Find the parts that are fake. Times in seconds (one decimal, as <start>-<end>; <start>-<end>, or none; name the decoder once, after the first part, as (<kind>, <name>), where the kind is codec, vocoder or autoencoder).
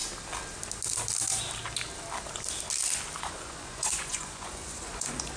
3.2-5.4 (vocoder, Vocos)